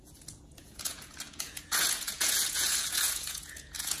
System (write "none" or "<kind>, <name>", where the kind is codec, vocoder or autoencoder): vocoder, Vocos